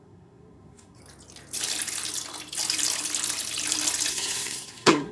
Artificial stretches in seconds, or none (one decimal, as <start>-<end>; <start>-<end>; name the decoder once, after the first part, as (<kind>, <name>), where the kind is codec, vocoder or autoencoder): 0.0-1.0 (codec, SNAC); 4.1-5.1